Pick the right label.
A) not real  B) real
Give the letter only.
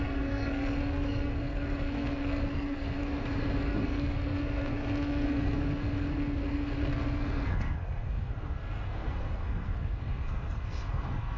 A